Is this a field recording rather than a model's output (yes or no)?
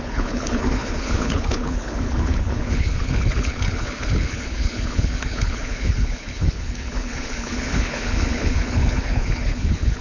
no